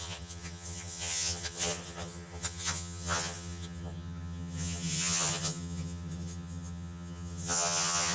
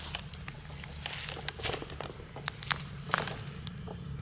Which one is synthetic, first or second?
first